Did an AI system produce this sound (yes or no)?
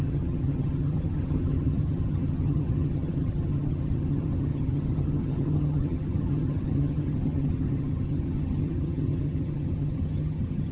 yes